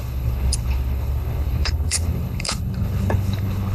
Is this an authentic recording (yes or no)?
no